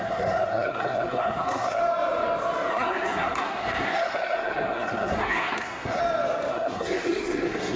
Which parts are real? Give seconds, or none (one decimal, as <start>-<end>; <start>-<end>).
1.8-2.7; 6.0-6.5